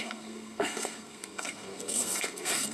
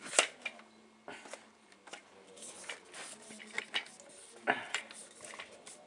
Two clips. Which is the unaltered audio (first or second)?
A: second